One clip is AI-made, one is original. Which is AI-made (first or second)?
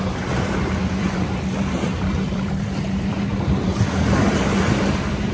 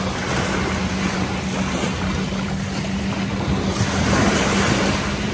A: first